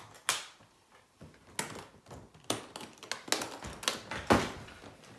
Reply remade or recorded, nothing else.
recorded